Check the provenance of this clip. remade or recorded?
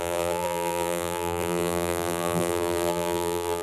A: remade